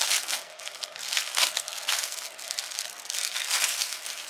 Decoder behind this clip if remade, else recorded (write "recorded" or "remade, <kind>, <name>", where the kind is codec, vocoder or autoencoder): remade, codec, SNAC